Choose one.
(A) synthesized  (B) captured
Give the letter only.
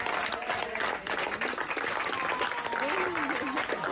B